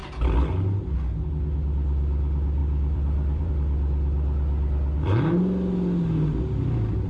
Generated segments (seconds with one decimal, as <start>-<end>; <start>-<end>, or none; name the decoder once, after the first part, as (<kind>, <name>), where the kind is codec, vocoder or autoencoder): 2.6-3.5 (vocoder, BigVGAN v2)